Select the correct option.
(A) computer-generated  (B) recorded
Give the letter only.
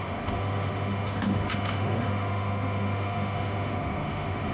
A